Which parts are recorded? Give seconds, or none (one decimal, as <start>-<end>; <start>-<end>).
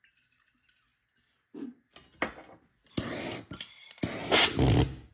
0.0-5.1